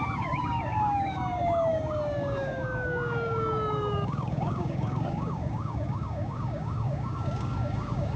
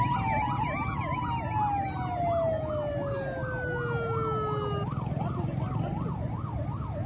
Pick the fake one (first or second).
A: first